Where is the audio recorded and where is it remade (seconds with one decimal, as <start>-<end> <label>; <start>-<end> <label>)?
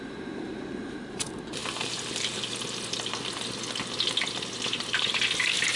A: 0.0-1.6 remade; 1.6-4.5 recorded; 4.5-5.8 remade